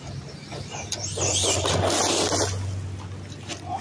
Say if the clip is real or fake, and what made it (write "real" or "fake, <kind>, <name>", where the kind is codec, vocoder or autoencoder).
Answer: real